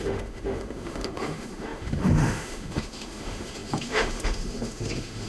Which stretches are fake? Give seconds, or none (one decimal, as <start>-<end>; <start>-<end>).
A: 0.0-5.3

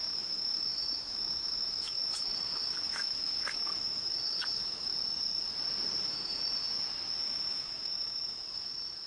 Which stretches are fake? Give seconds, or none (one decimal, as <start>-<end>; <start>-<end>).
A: 0.0-4.9; 6.0-6.6; 7.2-9.1

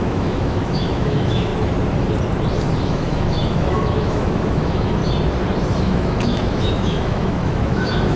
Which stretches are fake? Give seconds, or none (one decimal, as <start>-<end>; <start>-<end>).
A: 0.0-1.5; 2.8-5.0; 5.8-8.2

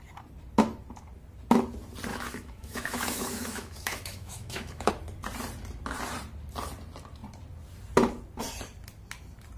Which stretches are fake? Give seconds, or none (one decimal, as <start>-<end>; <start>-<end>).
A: 2.1-4.9

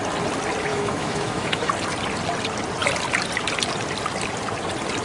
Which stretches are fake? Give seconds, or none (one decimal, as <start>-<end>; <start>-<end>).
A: 0.7-1.7

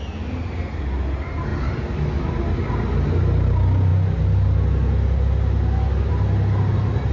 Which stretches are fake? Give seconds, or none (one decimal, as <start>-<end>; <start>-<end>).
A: none

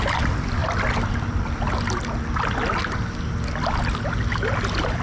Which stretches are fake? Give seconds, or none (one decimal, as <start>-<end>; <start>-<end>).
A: none